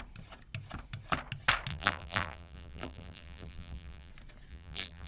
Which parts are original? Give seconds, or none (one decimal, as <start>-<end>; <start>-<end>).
0.0-1.7; 4.1-4.5